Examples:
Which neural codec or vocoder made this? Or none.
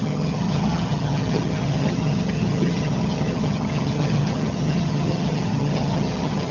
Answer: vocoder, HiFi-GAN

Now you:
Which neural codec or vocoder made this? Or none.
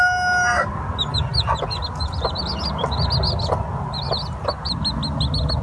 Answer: none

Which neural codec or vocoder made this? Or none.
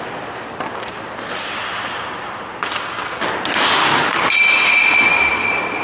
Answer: none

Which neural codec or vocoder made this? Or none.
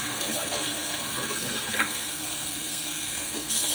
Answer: codec, SNAC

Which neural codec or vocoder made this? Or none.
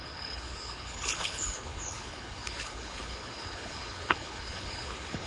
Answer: codec, HILCodec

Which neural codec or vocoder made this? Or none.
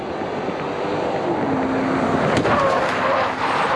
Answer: none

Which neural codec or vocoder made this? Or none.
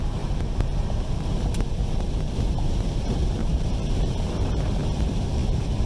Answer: vocoder, BigVGAN v2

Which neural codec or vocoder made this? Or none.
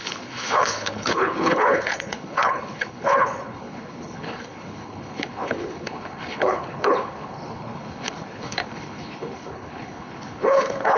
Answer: codec, HILCodec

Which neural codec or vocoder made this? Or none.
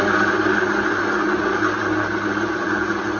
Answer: none